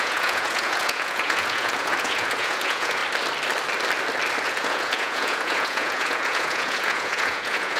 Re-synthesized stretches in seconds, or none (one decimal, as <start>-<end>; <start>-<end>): 0.0-3.0; 4.4-7.8